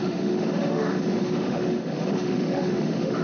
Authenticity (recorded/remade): remade